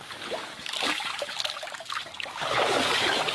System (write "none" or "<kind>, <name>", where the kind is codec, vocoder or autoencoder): codec, DAC